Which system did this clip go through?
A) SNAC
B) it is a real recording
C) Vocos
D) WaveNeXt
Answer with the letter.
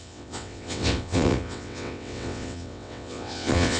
D